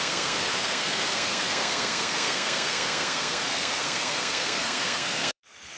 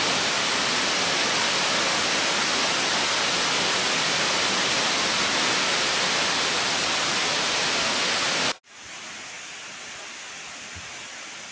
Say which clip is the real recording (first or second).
second